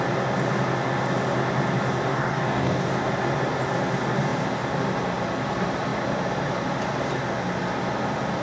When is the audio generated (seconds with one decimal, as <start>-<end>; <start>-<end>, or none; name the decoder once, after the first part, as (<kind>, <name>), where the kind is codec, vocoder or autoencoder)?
2.1-3.1 (codec, DAC)